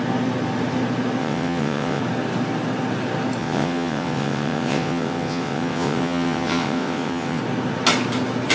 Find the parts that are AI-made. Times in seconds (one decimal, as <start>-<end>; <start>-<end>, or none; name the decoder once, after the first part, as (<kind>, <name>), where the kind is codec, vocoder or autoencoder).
1.2-2.0 (vocoder, WaveNeXt); 3.4-7.4